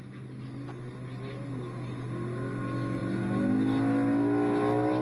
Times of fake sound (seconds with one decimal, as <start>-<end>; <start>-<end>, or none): none

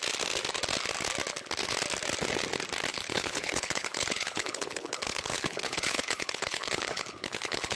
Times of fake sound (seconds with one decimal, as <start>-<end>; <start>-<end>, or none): 2.9-7.8

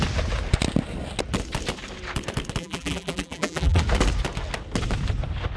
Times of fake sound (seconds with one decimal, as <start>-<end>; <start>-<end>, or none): 2.6-3.8

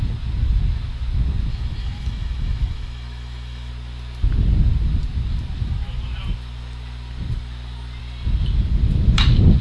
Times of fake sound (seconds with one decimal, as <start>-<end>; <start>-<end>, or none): 1.5-3.7

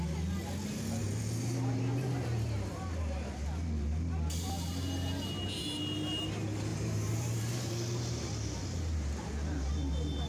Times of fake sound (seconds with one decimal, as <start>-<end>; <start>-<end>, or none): 1.0-2.7; 6.7-7.7

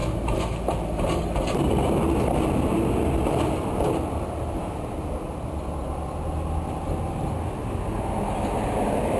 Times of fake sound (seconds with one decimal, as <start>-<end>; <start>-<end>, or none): 0.0-4.0

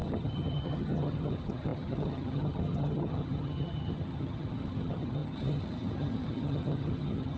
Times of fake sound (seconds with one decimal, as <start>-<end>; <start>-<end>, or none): 0.0-7.4